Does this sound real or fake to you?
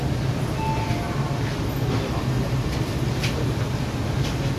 real